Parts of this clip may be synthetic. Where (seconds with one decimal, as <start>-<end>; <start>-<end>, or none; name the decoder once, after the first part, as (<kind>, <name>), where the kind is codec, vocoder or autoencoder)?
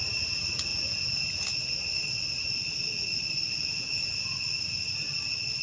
none